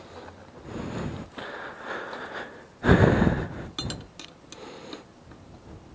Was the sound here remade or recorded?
recorded